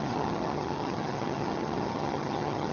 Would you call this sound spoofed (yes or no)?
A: yes